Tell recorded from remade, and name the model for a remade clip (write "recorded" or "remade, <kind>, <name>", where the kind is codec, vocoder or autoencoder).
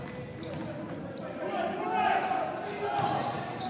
recorded